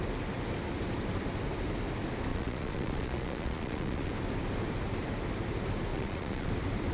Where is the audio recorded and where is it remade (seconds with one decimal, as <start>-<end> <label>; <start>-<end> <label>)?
0.0-2.3 recorded; 2.3-4.1 remade; 4.1-5.9 recorded; 5.9-6.5 remade; 6.5-6.9 recorded